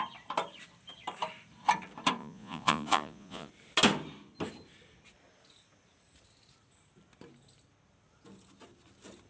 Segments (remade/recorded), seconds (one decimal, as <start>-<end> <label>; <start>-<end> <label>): 0.0-2.2 recorded; 2.2-3.5 remade; 3.5-9.3 recorded